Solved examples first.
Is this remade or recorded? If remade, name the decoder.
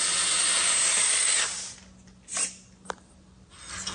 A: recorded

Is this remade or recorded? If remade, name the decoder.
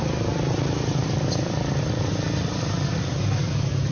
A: remade, vocoder, BigVGAN v2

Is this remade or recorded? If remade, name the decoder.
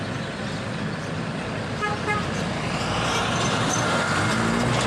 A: recorded